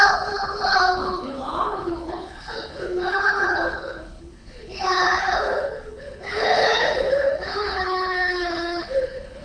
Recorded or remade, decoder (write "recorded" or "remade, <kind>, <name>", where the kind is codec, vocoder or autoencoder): remade, codec, HILCodec